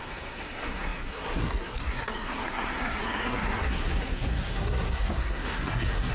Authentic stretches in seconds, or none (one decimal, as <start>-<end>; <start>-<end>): none